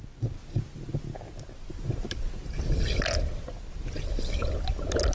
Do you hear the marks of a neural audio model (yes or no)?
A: no